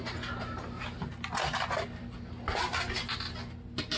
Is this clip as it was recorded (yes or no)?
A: yes